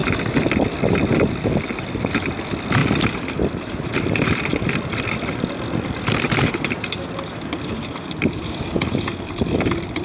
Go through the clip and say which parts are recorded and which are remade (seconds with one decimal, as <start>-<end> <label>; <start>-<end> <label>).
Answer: 0.0-1.9 recorded; 1.9-2.8 remade; 2.8-4.0 recorded; 4.0-4.5 remade; 4.5-5.3 recorded; 5.3-10.0 remade